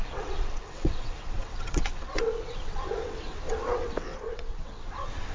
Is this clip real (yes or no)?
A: no